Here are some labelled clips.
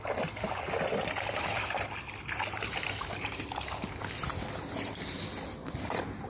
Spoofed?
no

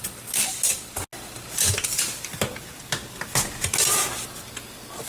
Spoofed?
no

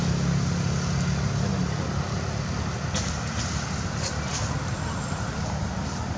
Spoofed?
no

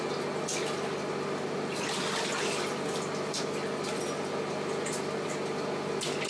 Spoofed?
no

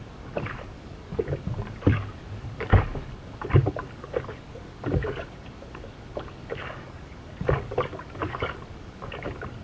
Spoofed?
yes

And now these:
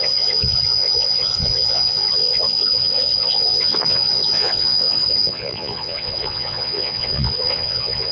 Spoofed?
yes